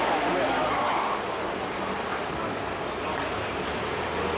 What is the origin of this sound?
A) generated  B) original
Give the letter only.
B